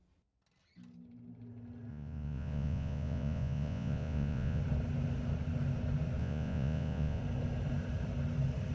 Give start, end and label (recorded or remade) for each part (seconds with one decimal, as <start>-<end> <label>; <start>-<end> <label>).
0.0-1.9 recorded; 1.9-4.6 remade; 4.6-6.2 recorded; 6.2-7.2 remade; 7.2-8.7 recorded